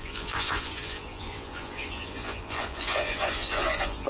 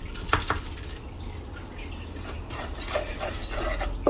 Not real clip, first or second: first